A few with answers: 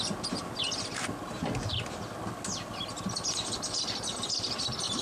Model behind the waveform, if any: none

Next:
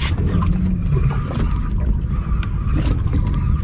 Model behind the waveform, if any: none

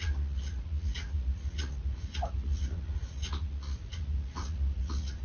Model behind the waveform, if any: vocoder, Vocos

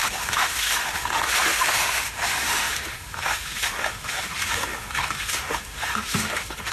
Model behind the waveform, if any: autoencoder, DAC-VAE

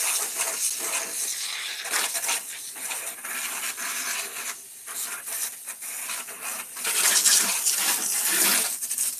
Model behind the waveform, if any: none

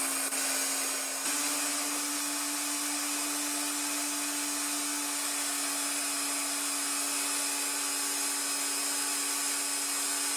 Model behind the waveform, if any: none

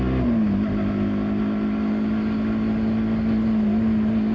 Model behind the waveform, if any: none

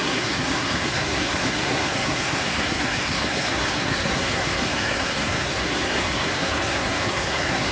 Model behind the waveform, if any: codec, SNAC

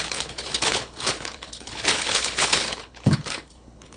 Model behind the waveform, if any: codec, HILCodec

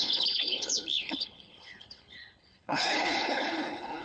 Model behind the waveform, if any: codec, HILCodec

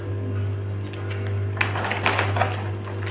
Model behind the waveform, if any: none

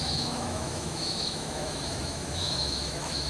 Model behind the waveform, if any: autoencoder, DAC-VAE